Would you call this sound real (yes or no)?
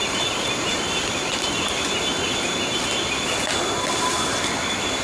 yes